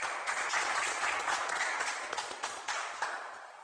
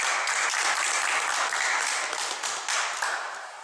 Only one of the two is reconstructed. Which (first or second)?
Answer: first